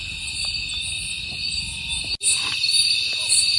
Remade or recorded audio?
recorded